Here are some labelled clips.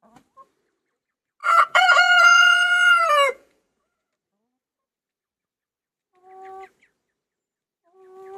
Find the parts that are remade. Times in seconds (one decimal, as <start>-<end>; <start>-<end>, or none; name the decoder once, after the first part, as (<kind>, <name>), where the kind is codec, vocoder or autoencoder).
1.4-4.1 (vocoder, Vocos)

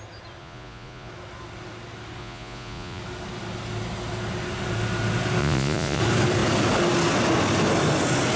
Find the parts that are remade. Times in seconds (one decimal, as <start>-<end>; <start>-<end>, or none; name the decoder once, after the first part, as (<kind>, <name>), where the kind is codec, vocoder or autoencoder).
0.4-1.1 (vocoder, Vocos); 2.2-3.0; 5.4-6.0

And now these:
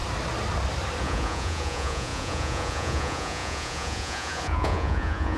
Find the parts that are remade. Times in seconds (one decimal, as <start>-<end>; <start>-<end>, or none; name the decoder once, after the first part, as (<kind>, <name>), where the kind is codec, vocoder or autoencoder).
1.0-5.4 (vocoder, Vocos)

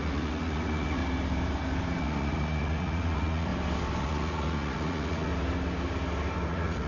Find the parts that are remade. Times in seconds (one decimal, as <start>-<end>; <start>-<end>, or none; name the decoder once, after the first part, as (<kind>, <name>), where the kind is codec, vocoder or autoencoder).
0.0-1.0 (vocoder, Vocos); 2.0-3.5; 4.0-5.3; 6.5-6.9

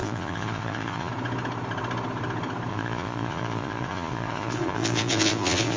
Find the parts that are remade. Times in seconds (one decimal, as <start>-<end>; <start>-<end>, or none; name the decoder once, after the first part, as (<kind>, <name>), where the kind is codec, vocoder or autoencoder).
0.0-1.1 (vocoder, Vocos); 2.7-5.8

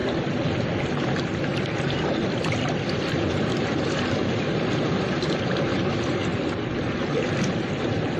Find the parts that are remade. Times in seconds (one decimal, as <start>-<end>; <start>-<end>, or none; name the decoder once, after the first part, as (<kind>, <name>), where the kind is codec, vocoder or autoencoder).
none